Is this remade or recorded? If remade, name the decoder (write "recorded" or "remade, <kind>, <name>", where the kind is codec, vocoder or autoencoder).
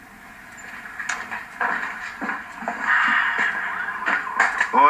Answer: recorded